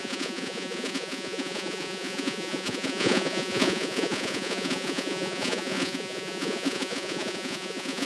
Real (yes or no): no